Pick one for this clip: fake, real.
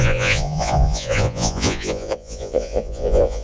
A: fake